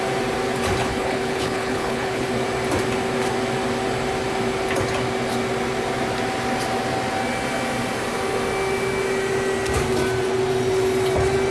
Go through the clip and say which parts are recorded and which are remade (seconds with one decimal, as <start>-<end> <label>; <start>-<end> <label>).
0.0-0.8 recorded; 0.8-2.3 remade; 2.3-11.5 recorded